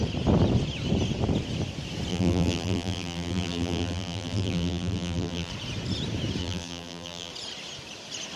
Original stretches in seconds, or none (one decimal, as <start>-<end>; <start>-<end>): 0.0-2.1; 5.5-6.4; 7.3-8.4